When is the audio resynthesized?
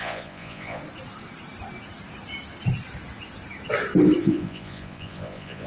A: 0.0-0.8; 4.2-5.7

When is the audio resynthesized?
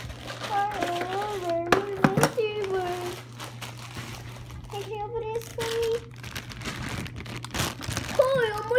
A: 5.5-6.1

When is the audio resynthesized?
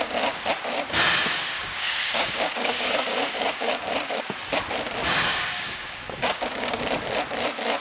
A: 1.2-4.2; 5.3-6.8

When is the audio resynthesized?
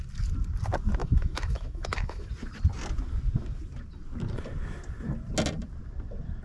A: 1.0-2.3